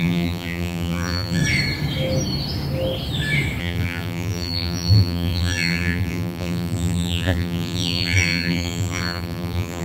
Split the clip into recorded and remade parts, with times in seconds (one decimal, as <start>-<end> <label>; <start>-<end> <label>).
0.0-1.4 remade; 1.4-3.6 recorded; 3.6-9.8 remade